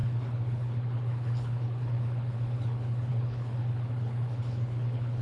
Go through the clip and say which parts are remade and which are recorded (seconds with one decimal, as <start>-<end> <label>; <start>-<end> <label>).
0.0-5.2 remade